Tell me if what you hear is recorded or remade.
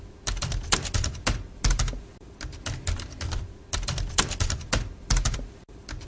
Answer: remade